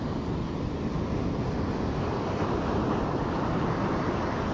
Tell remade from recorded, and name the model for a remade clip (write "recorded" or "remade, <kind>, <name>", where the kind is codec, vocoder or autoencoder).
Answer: recorded